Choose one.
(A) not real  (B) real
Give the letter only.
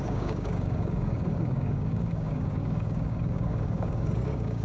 A